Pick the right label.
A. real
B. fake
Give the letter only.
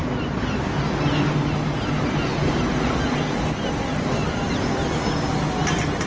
A